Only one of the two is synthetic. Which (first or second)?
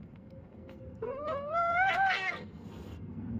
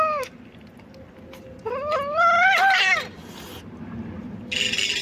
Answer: first